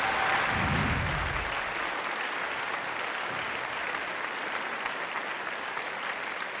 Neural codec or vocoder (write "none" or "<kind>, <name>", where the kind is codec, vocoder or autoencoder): none